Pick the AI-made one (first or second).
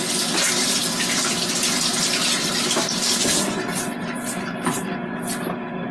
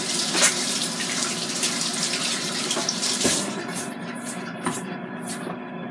second